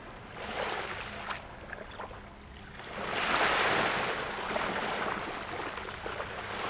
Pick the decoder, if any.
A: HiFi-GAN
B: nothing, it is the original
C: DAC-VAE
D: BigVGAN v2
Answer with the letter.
B